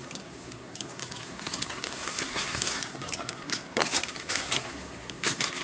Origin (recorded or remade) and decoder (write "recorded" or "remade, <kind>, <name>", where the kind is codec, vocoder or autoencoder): remade, codec, SNAC